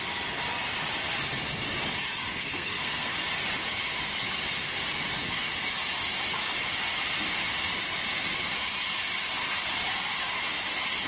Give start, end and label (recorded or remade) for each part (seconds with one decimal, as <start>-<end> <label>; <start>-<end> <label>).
0.0-2.4 recorded; 2.4-3.1 remade; 3.1-11.1 recorded